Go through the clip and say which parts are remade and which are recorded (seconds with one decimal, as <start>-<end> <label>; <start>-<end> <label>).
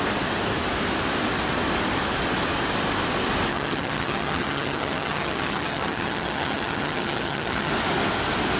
0.0-3.5 recorded; 3.5-7.7 remade; 7.7-8.6 recorded